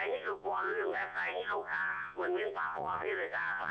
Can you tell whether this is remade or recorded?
remade